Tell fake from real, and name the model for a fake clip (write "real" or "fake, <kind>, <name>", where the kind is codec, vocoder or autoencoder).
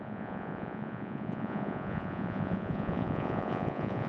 fake, vocoder, Vocos